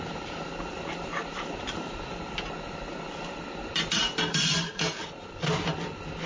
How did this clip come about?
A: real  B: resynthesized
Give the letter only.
A